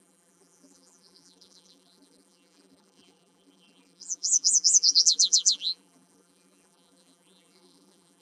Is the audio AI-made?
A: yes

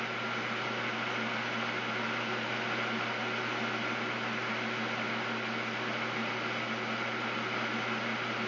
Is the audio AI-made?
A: no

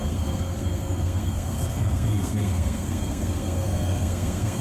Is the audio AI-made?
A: yes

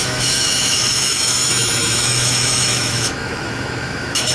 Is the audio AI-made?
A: yes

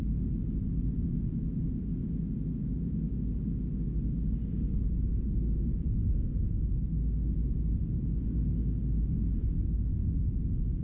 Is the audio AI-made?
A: no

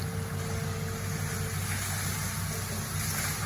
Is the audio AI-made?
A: no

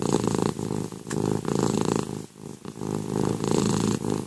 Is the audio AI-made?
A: no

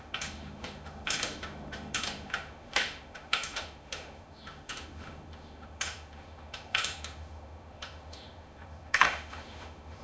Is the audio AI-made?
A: yes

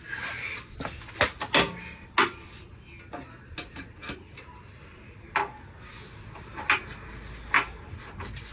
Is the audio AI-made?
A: no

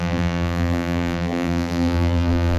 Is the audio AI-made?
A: yes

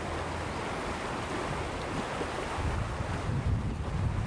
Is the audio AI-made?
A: no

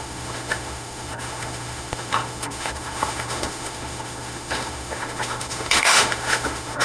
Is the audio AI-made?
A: yes